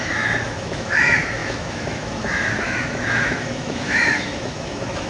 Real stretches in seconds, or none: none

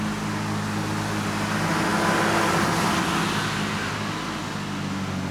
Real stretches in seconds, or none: 0.0-5.3

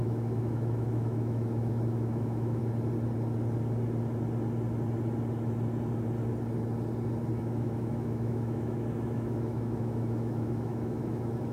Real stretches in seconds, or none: 2.6-7.4

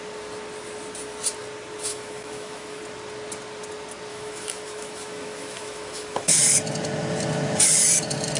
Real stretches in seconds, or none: 0.0-1.9; 2.8-4.1; 6.4-8.4

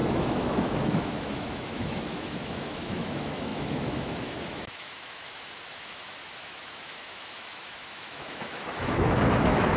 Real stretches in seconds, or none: none

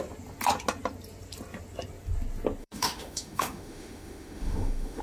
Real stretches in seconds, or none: 0.0-2.6

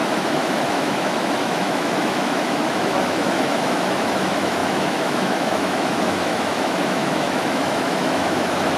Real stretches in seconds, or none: none